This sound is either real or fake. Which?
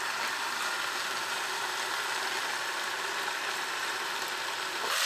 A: real